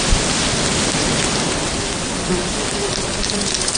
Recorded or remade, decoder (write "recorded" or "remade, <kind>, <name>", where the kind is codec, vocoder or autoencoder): recorded